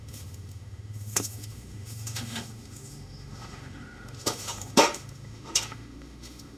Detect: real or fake fake